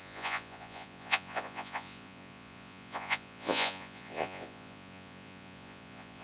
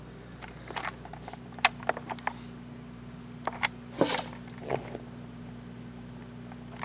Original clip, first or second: second